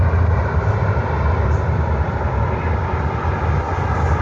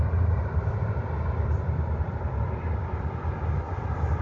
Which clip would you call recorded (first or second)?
first